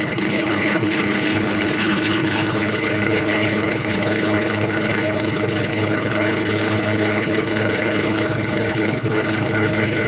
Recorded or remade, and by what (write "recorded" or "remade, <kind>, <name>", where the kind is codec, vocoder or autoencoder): remade, codec, HILCodec